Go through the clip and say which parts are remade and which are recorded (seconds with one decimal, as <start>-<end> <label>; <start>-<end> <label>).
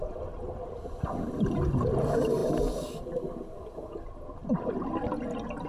0.0-5.7 recorded